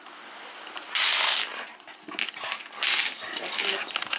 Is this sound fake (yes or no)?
no